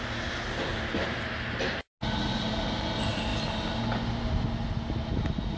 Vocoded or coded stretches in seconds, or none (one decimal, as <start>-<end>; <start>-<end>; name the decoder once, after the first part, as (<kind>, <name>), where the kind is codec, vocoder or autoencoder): none